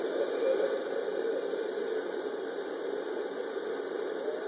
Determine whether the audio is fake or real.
real